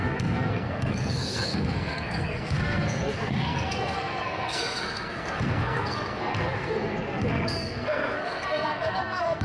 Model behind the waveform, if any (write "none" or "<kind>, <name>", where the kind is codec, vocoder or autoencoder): codec, SNAC